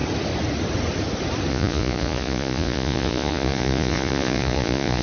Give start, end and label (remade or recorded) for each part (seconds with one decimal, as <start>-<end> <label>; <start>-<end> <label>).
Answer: 0.0-1.5 recorded; 1.5-5.0 remade